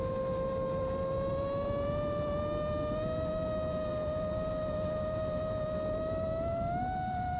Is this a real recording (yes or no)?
no